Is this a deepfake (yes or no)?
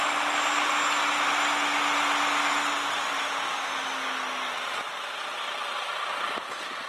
no